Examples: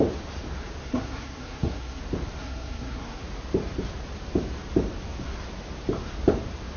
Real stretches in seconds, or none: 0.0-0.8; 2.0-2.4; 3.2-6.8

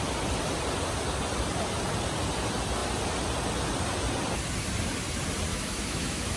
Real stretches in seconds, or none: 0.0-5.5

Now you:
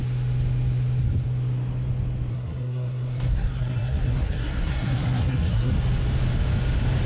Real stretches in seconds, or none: 0.0-2.3; 5.7-7.1